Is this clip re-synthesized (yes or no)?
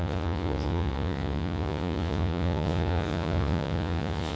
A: yes